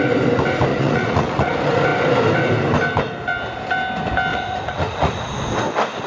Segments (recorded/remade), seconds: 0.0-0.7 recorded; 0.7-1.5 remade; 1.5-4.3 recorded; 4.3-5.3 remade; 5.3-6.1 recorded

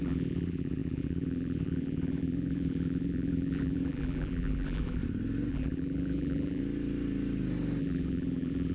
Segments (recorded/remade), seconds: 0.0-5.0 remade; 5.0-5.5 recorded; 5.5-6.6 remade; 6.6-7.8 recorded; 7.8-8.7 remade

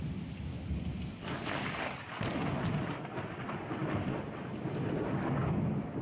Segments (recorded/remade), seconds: 0.0-0.9 recorded; 0.9-3.4 remade; 3.4-6.0 recorded